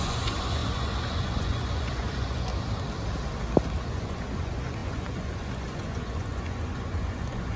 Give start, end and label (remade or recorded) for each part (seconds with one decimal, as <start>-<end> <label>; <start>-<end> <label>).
0.0-2.5 remade; 2.5-3.9 recorded; 3.9-7.6 remade